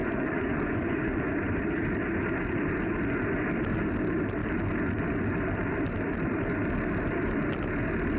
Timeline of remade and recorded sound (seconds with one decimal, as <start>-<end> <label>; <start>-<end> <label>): 0.0-1.3 remade; 1.3-8.2 recorded